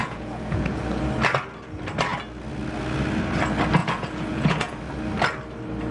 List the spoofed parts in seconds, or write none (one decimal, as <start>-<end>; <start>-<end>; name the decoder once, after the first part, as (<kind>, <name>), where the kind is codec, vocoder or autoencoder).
0.0-0.8 (vocoder, Vocos); 3.8-4.8